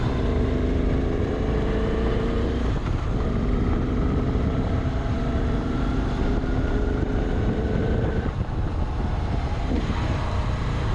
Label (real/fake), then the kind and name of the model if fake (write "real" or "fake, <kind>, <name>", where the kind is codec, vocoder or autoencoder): fake, vocoder, BigVGAN v2